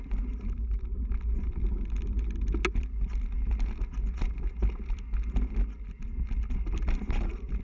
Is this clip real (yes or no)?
yes